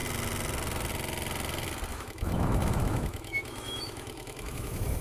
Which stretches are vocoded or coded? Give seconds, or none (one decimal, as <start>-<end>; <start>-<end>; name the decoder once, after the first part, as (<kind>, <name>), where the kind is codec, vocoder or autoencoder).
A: 1.9-5.0 (autoencoder, DAC-VAE)